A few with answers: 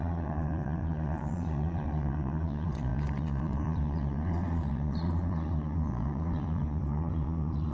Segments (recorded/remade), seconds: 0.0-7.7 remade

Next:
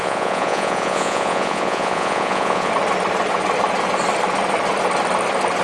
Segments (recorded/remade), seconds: 0.0-2.7 remade; 2.7-5.6 recorded

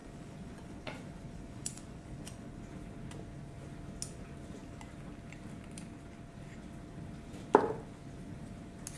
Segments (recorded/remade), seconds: 0.0-2.6 remade; 2.6-9.0 recorded

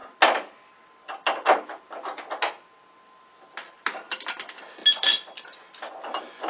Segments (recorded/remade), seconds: 0.0-6.5 recorded